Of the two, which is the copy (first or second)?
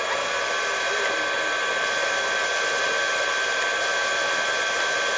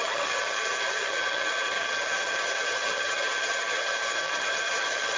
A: second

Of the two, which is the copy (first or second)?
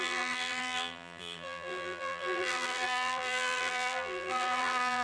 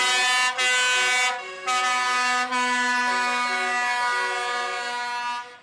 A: first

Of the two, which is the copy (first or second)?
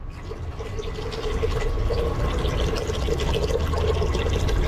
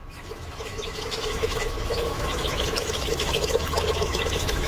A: second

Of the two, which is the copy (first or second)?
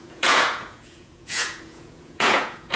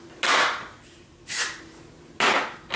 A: first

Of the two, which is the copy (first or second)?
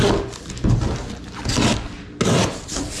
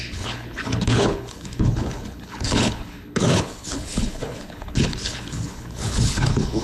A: second